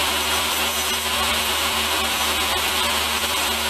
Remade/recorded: remade